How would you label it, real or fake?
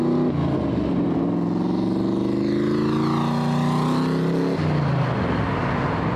real